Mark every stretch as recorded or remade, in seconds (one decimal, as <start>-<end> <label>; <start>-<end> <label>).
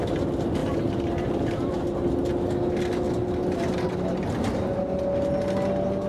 0.0-0.6 recorded; 0.6-1.8 remade; 1.8-6.1 recorded